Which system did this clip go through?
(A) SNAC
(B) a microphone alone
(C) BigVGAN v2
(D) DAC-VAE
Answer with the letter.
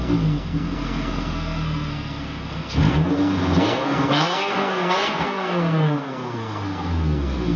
A